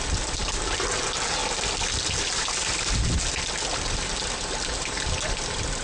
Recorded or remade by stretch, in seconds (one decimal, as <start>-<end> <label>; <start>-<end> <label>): 0.0-5.8 recorded